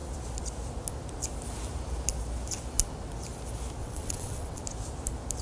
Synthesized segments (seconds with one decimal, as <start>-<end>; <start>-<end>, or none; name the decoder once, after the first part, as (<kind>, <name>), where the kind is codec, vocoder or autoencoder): 3.8-4.6 (vocoder, WaveNeXt)